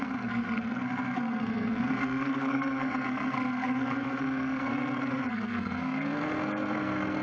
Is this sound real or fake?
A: fake